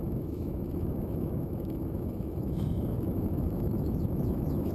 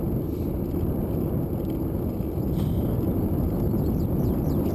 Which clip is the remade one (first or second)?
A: first